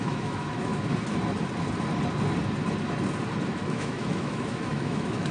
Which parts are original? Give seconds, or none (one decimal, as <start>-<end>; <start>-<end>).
0.7-3.7